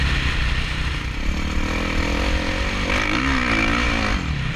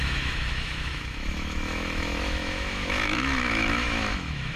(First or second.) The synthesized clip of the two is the second